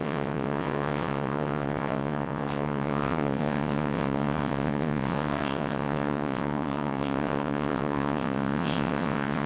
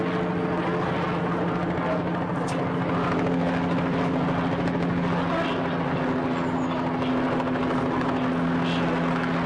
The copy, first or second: first